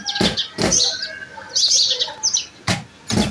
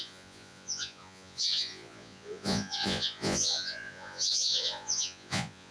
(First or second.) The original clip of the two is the first